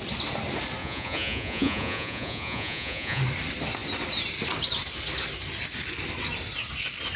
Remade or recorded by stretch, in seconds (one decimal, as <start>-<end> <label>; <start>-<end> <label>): 0.0-0.8 recorded; 0.8-3.2 remade; 3.2-7.2 recorded